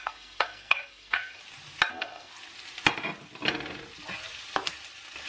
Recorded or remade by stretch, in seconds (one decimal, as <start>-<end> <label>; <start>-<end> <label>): 0.0-1.4 remade; 1.4-1.9 recorded; 1.9-2.3 remade; 2.3-5.3 recorded